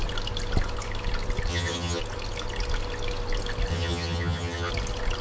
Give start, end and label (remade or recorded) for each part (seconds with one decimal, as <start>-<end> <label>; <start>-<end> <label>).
0.0-1.5 recorded; 1.5-2.0 remade; 2.0-3.7 recorded; 3.7-4.7 remade; 4.7-5.2 recorded